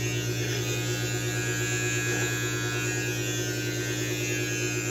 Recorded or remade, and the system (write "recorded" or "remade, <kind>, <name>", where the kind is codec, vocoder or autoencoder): recorded